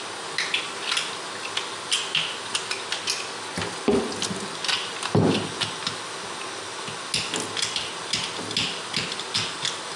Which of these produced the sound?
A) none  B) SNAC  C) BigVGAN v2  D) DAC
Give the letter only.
A